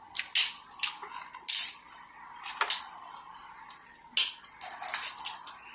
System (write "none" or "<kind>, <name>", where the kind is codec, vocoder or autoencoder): none